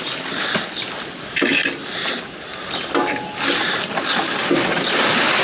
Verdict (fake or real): real